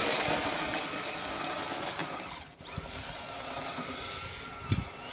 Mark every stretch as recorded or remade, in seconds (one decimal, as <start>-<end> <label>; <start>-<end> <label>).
0.0-5.1 recorded